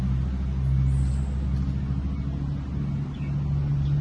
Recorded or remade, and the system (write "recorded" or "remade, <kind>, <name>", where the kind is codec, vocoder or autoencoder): recorded